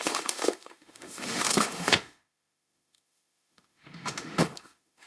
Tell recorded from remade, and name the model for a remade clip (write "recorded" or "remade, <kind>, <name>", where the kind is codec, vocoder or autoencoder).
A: remade, autoencoder, DAC-VAE